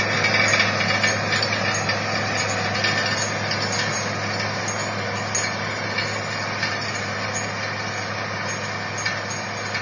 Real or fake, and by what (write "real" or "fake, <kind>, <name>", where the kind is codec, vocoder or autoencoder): real